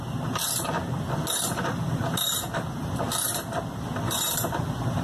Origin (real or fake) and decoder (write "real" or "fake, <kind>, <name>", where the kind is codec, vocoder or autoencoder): real